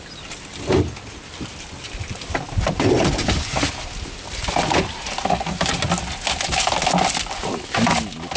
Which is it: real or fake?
real